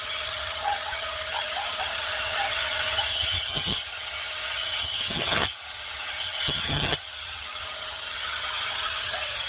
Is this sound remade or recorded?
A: remade